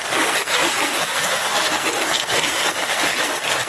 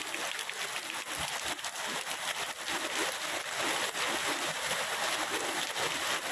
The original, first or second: second